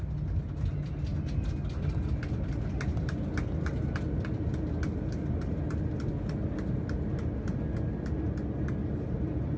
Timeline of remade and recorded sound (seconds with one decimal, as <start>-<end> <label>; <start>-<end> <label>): 0.0-9.6 recorded